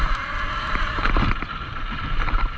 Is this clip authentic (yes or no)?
no